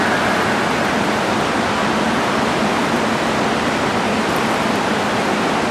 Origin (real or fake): real